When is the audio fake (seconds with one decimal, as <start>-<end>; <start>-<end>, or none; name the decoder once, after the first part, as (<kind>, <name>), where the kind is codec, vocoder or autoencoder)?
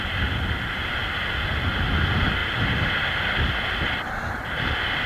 none